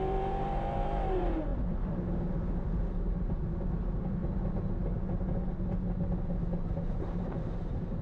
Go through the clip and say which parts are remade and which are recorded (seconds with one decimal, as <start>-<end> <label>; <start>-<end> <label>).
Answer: 0.0-4.2 remade; 4.2-6.9 recorded; 6.9-8.0 remade